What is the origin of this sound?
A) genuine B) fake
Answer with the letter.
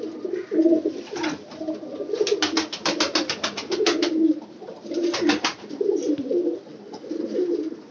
A